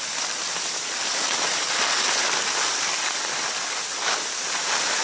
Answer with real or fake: real